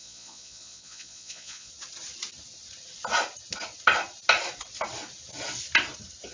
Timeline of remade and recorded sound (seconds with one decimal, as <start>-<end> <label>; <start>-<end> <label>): 0.0-1.7 remade; 1.7-6.3 recorded